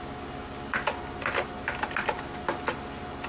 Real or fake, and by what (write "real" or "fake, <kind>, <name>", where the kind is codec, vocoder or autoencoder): real